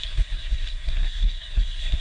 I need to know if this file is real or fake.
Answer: fake